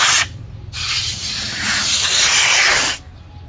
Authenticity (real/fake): real